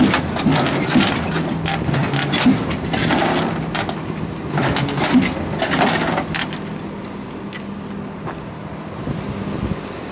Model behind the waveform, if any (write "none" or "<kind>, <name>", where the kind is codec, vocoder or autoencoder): none